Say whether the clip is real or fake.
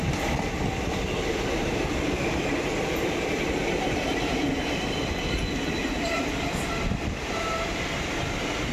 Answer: real